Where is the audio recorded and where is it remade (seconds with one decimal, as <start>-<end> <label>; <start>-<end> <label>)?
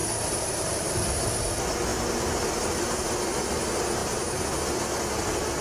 0.0-0.9 remade; 0.9-1.9 recorded; 1.9-2.8 remade; 2.8-5.6 recorded